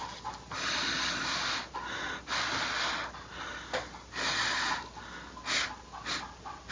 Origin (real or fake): real